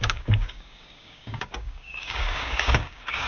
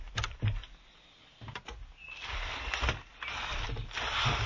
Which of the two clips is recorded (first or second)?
second